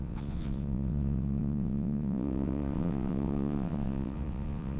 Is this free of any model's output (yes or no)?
no